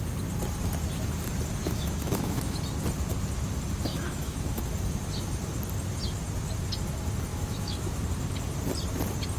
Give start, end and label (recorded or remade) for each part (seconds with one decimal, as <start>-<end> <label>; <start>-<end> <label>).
0.0-1.6 recorded; 1.6-2.6 remade; 2.6-3.9 recorded; 3.9-4.7 remade; 4.7-7.3 recorded; 7.3-8.0 remade; 8.0-9.4 recorded